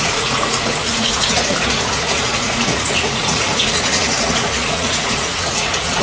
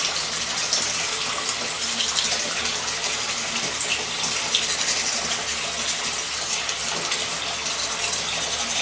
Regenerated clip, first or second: first